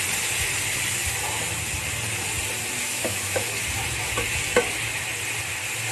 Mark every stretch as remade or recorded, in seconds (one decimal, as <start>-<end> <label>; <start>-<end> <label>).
0.0-2.8 recorded; 2.8-3.6 remade; 3.6-5.9 recorded